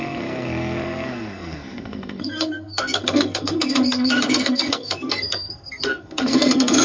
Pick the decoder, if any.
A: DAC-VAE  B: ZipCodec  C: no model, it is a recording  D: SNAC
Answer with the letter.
D